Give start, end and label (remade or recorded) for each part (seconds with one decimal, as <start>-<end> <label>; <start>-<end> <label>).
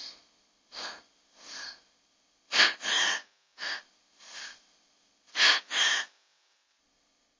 0.0-2.9 remade; 2.9-3.8 recorded; 3.8-5.3 remade; 5.3-6.8 recorded; 6.8-7.4 remade